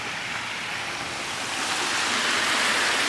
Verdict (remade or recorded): recorded